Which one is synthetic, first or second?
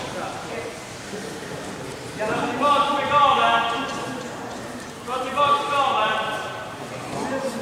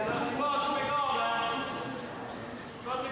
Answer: first